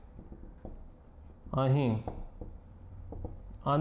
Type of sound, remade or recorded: remade